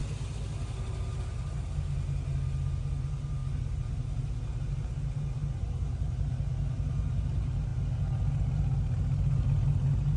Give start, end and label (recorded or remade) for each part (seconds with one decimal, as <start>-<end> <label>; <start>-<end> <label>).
0.0-10.2 recorded